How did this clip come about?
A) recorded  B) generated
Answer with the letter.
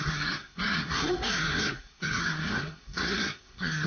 B